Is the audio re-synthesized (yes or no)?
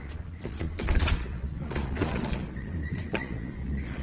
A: yes